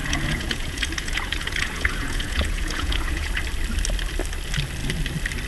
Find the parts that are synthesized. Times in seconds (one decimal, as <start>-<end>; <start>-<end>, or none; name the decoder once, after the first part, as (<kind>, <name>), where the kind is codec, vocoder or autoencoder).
0.0-3.3 (vocoder, Vocos)